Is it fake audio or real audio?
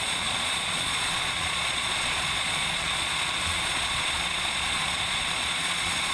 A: fake